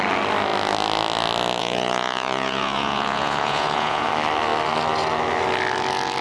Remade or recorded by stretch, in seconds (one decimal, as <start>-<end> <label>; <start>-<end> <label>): 0.0-1.6 recorded; 1.6-4.1 remade; 4.1-6.2 recorded